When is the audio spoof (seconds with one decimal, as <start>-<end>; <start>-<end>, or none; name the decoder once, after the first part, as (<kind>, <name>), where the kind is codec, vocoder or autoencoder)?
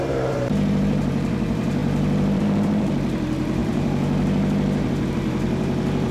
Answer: 0.0-6.1 (vocoder, BigVGAN v2)